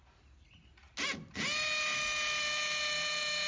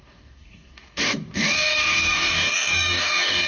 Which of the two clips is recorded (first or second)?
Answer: first